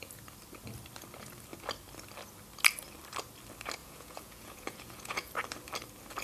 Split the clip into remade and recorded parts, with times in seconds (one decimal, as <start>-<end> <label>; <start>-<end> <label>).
0.0-3.8 recorded; 3.8-5.3 remade; 5.3-6.2 recorded